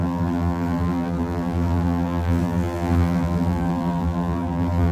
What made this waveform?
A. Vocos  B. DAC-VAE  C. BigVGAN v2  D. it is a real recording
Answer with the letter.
C